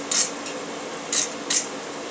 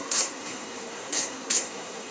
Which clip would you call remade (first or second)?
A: second